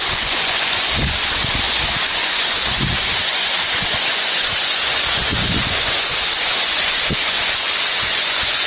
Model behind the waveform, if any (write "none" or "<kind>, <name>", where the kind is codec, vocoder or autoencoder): vocoder, Vocos